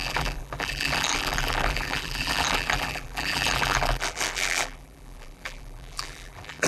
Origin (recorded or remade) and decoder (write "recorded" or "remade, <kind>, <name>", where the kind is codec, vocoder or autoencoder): remade, vocoder, BigVGAN v2